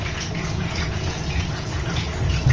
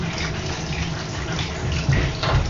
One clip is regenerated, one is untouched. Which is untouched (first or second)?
second